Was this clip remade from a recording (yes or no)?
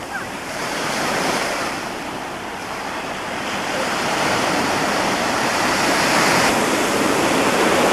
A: yes